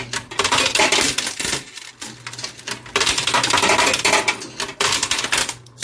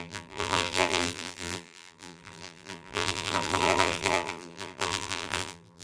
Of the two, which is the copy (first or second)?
second